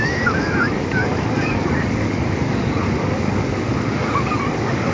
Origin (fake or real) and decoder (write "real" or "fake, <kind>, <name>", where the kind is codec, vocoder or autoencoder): fake, codec, DAC